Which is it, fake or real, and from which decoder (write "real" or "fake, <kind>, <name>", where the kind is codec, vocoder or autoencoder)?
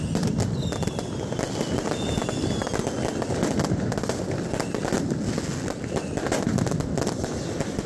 real